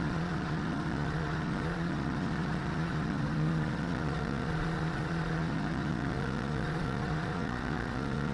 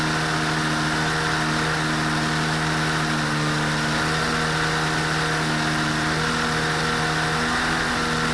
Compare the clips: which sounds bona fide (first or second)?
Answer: second